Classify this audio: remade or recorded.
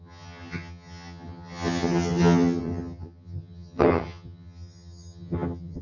remade